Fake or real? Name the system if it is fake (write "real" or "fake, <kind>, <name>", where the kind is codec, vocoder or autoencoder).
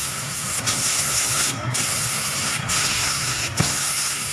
fake, codec, SNAC